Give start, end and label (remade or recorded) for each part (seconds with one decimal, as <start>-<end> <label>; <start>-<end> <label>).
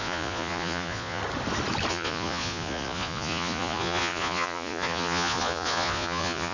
0.0-1.2 remade; 1.2-1.9 recorded; 1.9-6.5 remade